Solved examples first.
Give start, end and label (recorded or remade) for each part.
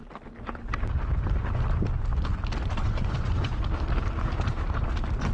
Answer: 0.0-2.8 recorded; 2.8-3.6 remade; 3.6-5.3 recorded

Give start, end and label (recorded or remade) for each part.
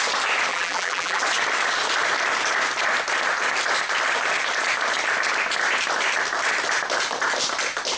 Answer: 0.0-0.5 recorded; 0.5-1.2 remade; 1.2-8.0 recorded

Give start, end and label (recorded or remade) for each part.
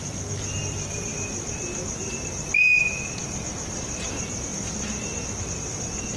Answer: 0.0-6.2 recorded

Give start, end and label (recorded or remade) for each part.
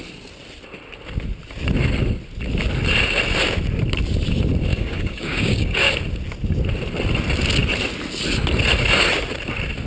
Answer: 0.0-4.7 recorded; 4.7-5.9 remade; 5.9-9.9 recorded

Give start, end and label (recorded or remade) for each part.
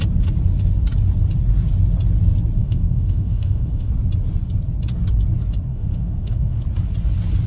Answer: 0.0-2.6 recorded; 2.6-3.9 remade; 3.9-5.7 recorded; 5.7-6.6 remade; 6.6-7.5 recorded